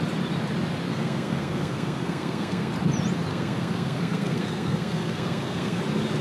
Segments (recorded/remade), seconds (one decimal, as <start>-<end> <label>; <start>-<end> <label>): 0.0-0.9 recorded; 0.9-2.7 remade; 2.7-3.3 recorded; 3.3-5.8 remade; 5.8-6.2 recorded